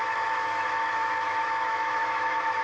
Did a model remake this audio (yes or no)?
yes